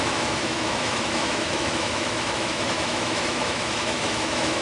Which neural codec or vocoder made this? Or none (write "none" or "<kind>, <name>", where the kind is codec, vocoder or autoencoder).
autoencoder, DAC-VAE